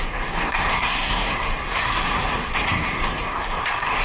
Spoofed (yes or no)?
yes